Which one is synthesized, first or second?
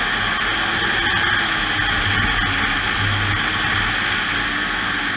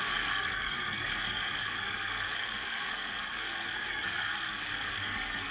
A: second